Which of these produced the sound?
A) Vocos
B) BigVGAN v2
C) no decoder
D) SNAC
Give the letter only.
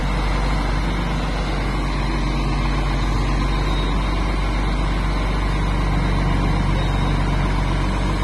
C